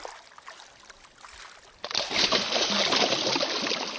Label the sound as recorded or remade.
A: recorded